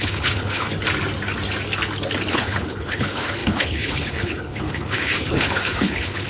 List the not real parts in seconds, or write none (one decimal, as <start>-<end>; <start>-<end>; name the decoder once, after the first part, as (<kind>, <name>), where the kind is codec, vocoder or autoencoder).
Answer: 0.0-0.7 (codec, HILCodec); 2.3-6.3